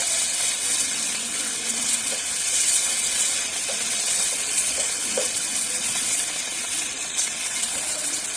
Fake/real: fake